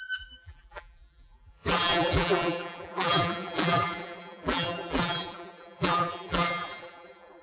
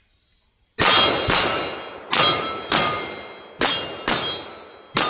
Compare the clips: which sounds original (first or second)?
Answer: second